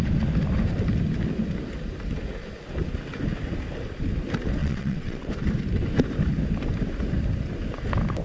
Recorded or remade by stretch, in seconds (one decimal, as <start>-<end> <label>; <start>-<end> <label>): 0.0-4.6 recorded; 4.6-5.3 remade; 5.3-8.2 recorded